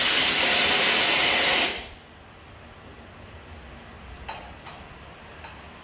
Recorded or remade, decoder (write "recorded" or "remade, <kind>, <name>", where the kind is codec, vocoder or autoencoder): recorded